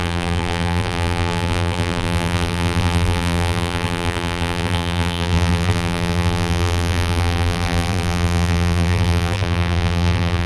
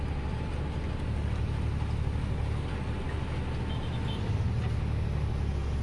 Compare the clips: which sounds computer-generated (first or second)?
first